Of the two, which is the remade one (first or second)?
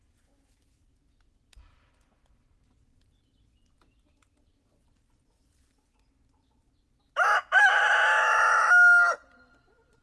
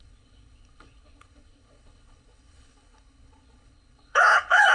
second